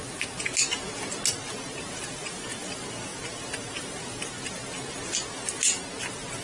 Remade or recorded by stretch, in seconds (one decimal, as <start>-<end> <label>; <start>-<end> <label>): 0.0-6.4 recorded